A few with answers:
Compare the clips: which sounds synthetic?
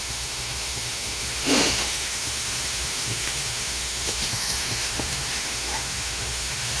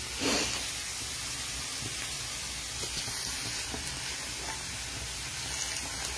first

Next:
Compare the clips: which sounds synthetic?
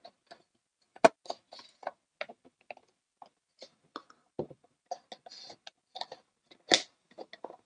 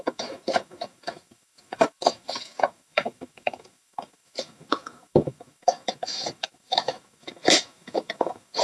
second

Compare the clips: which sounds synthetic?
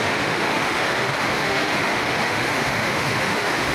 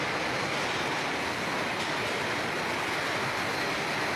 first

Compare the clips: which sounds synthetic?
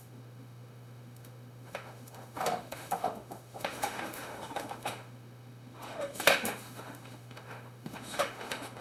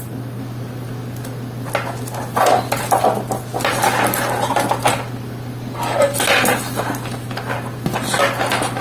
first